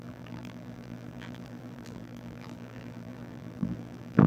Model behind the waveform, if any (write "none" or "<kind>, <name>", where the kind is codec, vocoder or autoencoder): vocoder, BigVGAN v2